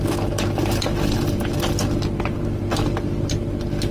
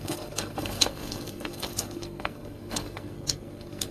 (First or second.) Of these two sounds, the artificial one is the second